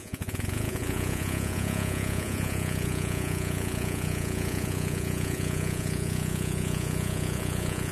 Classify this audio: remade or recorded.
remade